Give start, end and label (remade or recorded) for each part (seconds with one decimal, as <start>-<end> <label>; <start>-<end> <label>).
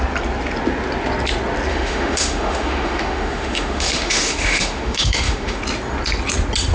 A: 0.0-1.7 recorded; 1.7-5.6 remade; 5.6-6.7 recorded